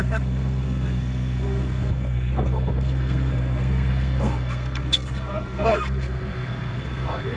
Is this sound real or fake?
fake